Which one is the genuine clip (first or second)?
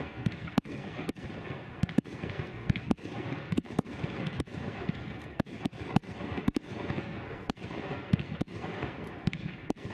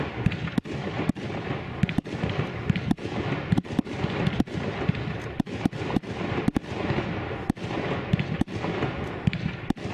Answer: second